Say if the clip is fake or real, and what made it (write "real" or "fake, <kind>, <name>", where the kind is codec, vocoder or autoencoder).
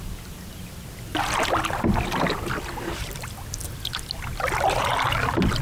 real